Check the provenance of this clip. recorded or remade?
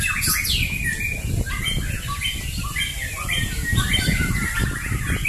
recorded